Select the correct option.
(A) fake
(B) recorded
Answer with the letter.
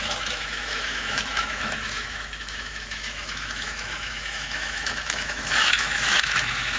A